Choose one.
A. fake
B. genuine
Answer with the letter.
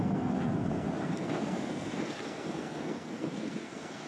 A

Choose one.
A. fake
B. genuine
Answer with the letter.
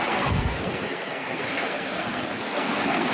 A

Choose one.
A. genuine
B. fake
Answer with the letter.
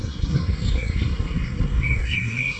B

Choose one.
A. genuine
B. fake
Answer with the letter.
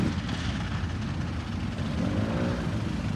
A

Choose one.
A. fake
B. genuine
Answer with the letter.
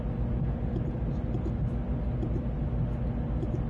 B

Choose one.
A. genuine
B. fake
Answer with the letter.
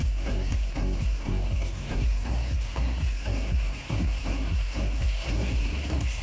B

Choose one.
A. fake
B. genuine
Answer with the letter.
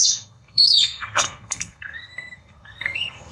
A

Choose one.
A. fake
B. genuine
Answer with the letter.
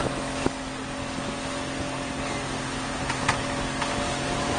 B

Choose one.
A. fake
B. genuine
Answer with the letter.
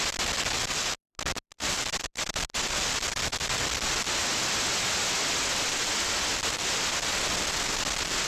B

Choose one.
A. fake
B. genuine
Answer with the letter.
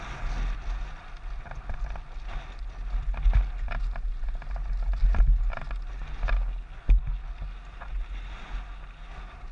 B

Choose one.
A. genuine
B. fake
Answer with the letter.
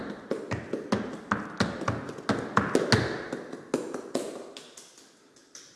A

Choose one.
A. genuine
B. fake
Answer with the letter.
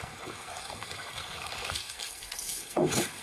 B